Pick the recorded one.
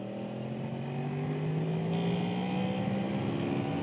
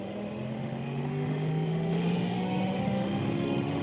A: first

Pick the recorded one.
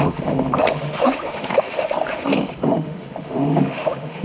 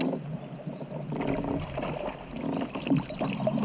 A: second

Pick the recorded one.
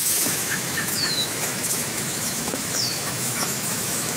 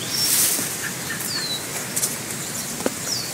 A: second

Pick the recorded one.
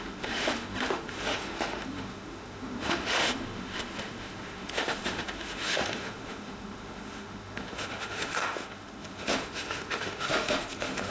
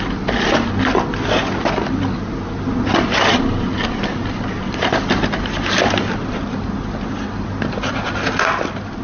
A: second